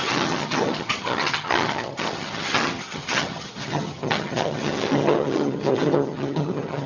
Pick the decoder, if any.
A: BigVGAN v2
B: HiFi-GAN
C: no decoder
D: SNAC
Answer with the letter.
B